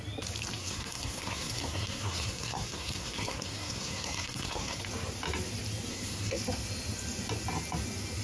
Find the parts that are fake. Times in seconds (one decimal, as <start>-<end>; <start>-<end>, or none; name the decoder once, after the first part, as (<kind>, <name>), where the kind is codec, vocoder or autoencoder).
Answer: 0.6-4.8 (codec, SNAC); 5.9-6.4